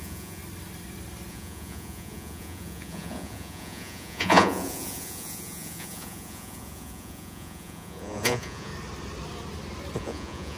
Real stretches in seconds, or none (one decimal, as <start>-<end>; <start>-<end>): 0.4-1.3; 8.7-10.0